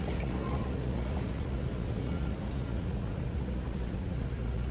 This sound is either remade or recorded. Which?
remade